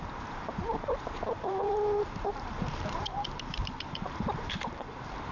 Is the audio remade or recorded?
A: remade